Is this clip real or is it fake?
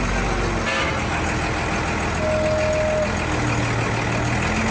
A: real